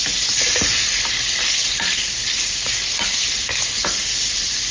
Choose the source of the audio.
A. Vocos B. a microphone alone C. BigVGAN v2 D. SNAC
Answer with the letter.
B